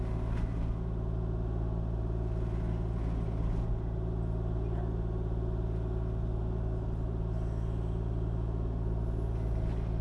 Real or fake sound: real